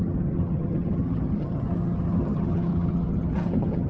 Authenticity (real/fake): fake